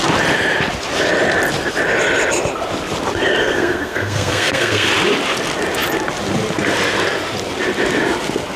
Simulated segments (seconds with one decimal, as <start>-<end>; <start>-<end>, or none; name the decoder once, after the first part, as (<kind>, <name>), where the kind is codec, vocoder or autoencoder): 3.4-4.9 (codec, SNAC)